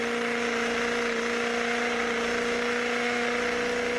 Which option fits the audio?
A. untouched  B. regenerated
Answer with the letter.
A